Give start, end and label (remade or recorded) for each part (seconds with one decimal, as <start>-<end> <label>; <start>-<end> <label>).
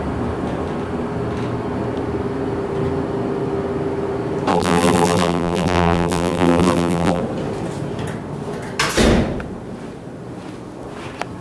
0.0-4.5 recorded; 4.5-7.2 remade; 7.2-11.4 recorded